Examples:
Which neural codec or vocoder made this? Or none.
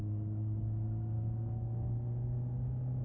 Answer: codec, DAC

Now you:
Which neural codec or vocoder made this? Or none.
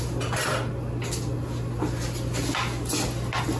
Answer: none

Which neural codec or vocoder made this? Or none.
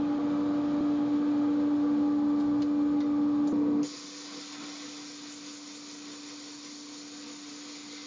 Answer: none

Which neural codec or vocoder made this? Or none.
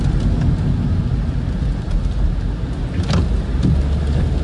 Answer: none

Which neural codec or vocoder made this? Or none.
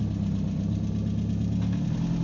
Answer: none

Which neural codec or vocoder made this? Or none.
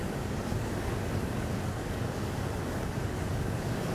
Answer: codec, DAC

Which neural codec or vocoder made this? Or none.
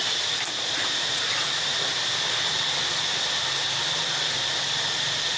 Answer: none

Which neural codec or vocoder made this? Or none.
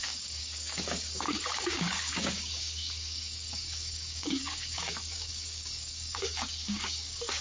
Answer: codec, DAC